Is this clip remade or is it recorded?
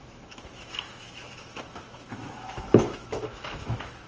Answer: remade